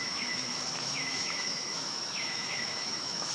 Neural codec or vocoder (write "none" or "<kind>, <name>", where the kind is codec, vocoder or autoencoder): autoencoder, DAC-VAE